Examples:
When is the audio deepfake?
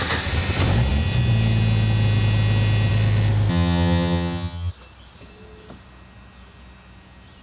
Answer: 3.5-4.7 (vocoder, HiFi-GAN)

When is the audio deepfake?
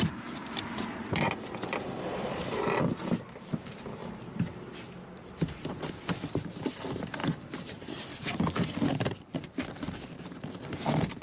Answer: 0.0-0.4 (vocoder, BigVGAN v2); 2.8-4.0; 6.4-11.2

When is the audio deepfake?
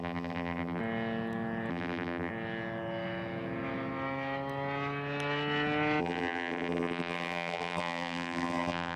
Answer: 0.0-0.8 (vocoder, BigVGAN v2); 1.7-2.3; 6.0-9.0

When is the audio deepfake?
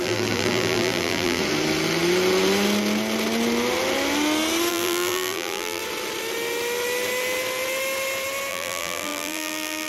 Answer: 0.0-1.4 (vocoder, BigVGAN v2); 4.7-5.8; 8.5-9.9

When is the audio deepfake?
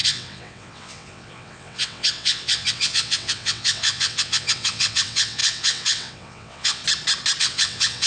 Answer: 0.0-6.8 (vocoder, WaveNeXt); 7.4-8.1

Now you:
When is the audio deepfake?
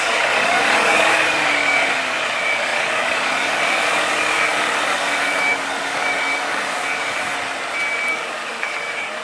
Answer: 0.0-7.3 (codec, DAC); 8.1-9.2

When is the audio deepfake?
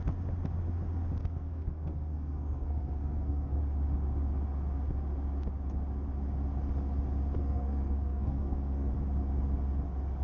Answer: 1.2-3.6 (codec, SNAC); 7.4-8.9